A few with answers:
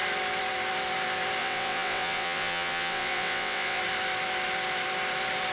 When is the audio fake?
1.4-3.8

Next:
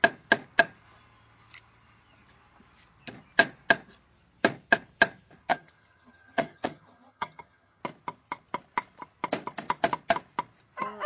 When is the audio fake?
5.5-7.8

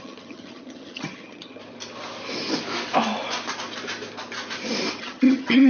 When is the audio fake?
0.0-1.6; 5.0-5.7